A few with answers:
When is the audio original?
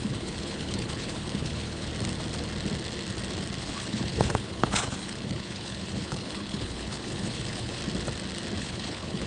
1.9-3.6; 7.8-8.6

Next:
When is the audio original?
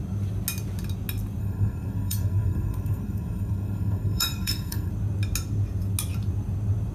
0.0-1.4; 4.9-6.9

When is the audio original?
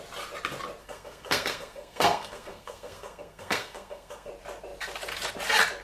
0.0-0.8; 4.3-5.8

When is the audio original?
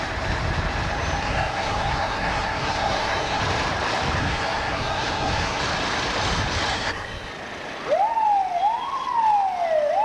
0.0-1.2; 3.4-4.2; 5.6-6.7; 7.3-10.0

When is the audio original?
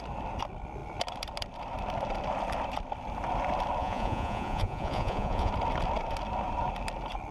0.0-3.8; 5.5-7.3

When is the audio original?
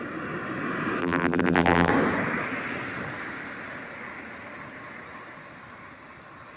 0.0-1.0; 1.9-6.6